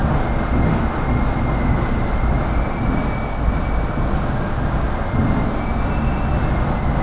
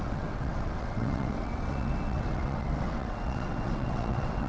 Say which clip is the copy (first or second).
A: second